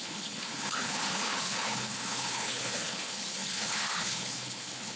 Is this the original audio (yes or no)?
no